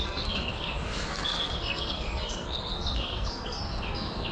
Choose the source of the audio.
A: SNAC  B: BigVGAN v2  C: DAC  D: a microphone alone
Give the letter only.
A